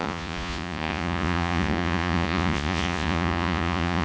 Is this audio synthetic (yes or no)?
yes